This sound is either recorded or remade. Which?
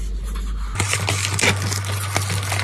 recorded